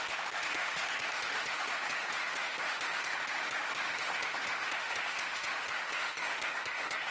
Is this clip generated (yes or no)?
yes